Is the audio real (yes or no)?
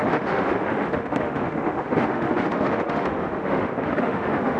no